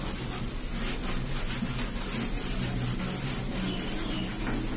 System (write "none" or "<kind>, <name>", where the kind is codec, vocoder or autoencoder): none